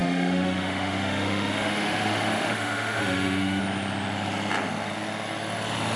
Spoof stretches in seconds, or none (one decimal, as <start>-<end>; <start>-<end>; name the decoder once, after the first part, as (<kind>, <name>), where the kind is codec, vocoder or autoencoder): 0.0-3.6 (autoencoder, DAC-VAE)